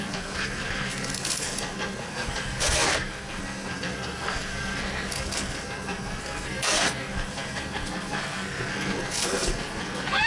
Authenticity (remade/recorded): remade